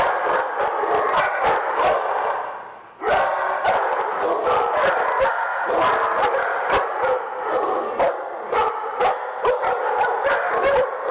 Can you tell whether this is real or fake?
real